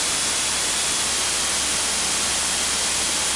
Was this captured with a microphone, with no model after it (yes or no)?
yes